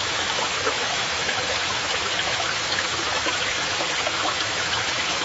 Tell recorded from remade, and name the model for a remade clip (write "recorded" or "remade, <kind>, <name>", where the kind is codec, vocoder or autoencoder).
remade, autoencoder, DAC-VAE